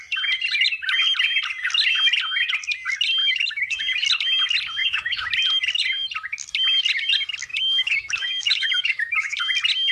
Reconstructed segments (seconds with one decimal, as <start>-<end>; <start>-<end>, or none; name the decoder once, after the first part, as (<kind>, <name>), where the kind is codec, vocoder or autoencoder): 3.2-3.8 (autoencoder, DAC-VAE); 4.8-5.3; 7.5-9.4